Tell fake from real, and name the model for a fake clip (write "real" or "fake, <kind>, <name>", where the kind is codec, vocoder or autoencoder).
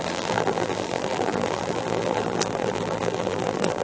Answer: fake, vocoder, BigVGAN v2